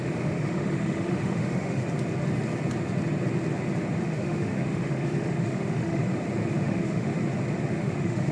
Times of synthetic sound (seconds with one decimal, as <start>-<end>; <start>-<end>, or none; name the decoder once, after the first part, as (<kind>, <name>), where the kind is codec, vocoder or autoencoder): 0.0-1.8 (autoencoder, DAC-VAE); 4.0-6.0; 6.5-7.1; 7.7-8.3